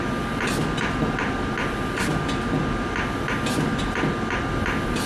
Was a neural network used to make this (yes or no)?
no